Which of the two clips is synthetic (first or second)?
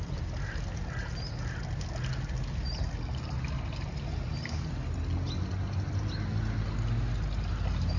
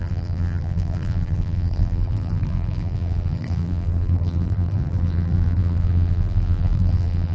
second